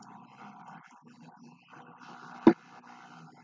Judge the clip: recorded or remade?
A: recorded